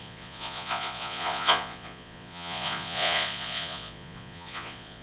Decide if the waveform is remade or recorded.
remade